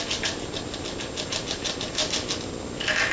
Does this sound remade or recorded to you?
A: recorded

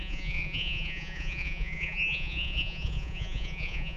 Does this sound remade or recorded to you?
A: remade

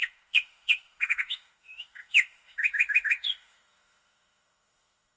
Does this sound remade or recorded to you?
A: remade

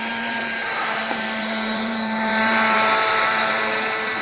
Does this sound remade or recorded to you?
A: remade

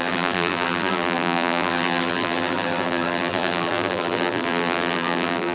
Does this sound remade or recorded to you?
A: remade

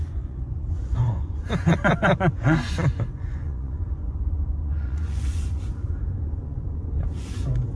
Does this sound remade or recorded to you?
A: remade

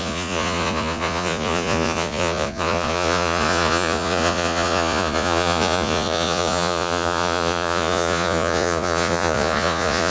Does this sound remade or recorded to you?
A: remade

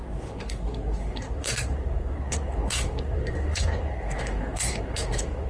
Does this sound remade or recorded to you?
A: remade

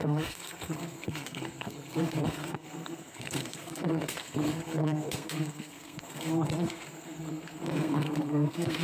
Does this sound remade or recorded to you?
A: remade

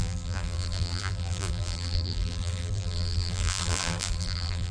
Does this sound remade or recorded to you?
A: remade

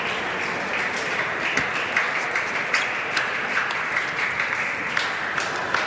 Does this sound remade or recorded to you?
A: recorded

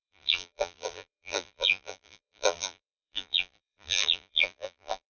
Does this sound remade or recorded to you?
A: remade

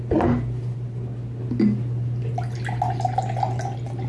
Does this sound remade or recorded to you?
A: recorded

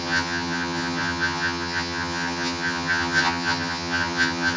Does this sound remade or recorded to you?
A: remade